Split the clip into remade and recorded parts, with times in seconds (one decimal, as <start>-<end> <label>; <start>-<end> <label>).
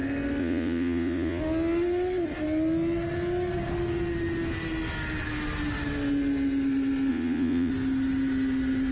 0.0-0.4 recorded; 0.4-1.4 remade; 1.4-7.1 recorded; 7.1-7.7 remade; 7.7-8.9 recorded